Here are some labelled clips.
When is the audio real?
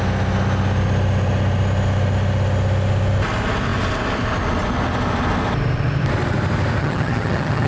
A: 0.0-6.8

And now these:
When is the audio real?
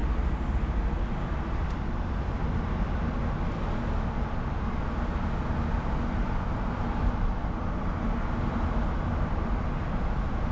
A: 0.0-10.5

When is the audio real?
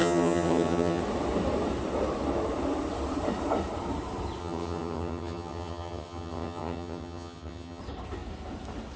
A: 1.0-4.4; 7.8-9.0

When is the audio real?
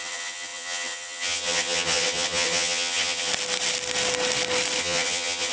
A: 3.3-4.8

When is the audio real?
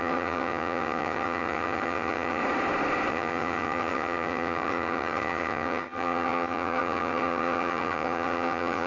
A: 2.4-3.1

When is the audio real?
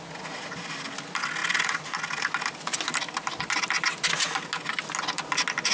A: 0.0-5.7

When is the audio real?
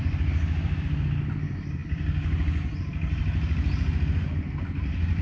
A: 0.0-5.2